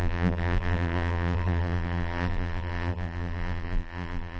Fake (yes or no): yes